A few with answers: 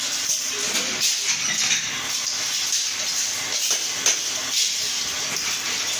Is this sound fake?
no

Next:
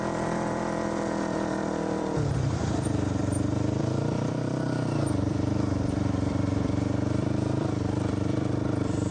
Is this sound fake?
yes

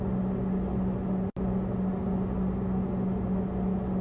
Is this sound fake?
no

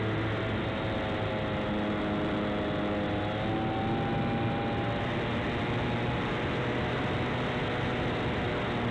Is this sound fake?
no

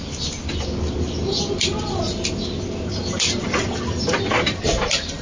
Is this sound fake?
no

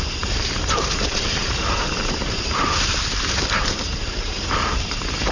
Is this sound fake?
yes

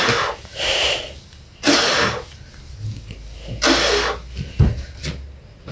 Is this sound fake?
no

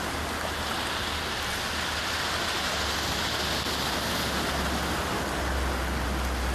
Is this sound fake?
no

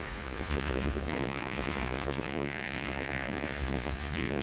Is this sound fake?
yes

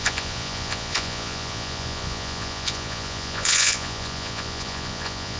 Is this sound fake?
yes